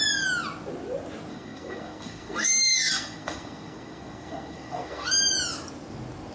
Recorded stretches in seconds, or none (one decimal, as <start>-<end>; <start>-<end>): 0.0-1.3; 5.1-6.3